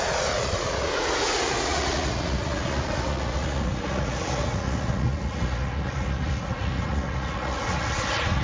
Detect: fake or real fake